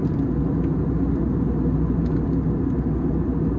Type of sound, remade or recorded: recorded